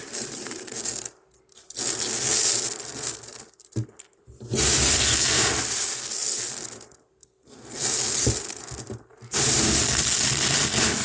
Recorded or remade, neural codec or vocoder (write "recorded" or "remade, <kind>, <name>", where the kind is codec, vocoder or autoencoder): recorded